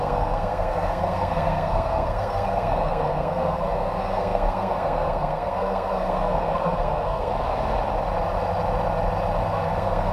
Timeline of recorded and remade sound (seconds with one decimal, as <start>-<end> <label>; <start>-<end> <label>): 0.0-7.3 remade; 7.3-9.4 recorded; 9.4-10.1 remade